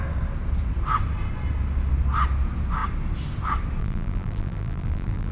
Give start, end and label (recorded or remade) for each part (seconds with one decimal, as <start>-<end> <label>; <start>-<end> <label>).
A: 0.0-3.8 recorded; 3.8-5.3 remade